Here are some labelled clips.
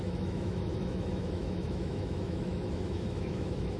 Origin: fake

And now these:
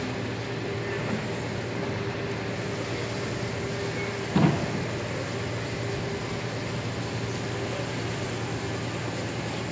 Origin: real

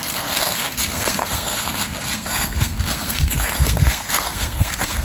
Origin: fake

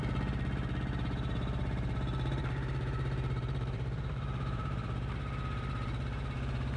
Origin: fake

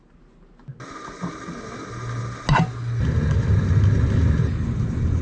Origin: real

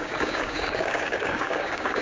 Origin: fake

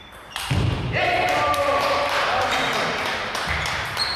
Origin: fake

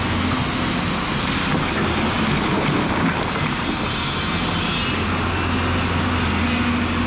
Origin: real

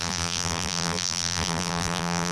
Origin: fake